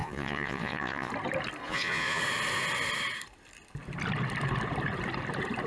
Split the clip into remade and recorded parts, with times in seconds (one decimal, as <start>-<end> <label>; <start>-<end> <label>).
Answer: 0.0-1.1 remade; 1.1-1.6 recorded; 1.6-2.2 remade; 2.2-5.7 recorded